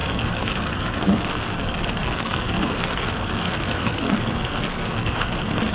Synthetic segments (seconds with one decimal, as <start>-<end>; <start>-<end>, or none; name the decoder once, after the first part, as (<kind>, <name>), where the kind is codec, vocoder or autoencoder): 0.0-5.7 (codec, SNAC)